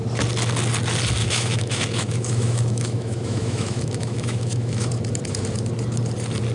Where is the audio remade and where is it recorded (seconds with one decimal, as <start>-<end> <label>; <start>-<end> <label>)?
0.0-1.2 recorded; 1.2-4.9 remade; 4.9-6.5 recorded